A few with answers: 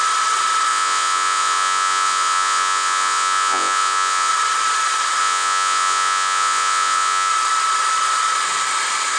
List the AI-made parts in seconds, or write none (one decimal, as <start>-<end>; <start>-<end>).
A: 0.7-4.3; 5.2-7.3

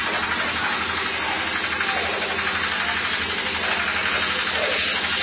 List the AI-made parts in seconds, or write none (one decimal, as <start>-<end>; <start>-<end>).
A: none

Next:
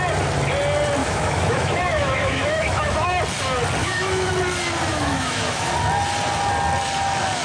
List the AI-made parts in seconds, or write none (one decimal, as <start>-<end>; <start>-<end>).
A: 1.0-3.2; 3.8-4.3; 4.9-5.7

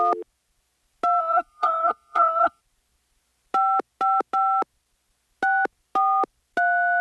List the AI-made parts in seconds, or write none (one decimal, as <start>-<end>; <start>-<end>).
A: 1.2-2.6

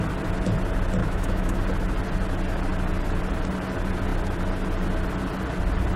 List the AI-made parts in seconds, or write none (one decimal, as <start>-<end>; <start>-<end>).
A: 1.0-1.6